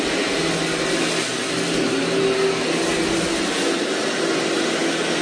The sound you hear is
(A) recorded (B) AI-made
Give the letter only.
A